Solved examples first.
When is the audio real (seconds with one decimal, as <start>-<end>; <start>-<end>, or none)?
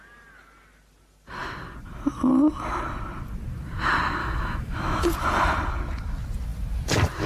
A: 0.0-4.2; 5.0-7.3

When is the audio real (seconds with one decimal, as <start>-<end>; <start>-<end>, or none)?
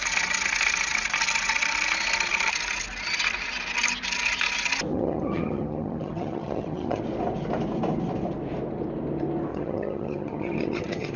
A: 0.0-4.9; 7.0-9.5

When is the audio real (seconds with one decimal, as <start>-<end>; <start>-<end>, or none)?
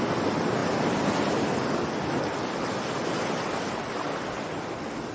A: 0.0-5.1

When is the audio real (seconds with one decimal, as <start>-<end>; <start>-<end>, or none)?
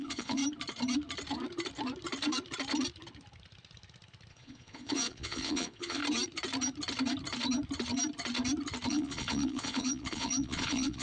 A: 0.4-4.3; 6.0-8.9